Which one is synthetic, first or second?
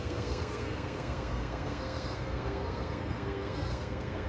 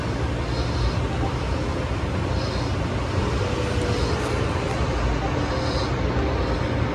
first